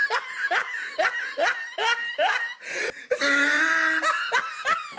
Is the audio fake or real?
real